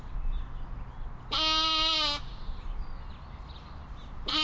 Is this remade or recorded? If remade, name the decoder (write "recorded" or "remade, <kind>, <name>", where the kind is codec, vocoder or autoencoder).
recorded